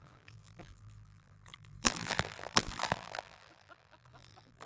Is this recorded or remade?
remade